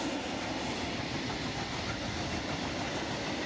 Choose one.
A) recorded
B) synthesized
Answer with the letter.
A